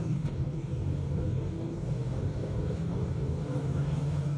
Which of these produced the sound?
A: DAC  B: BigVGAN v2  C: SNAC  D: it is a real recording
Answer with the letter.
A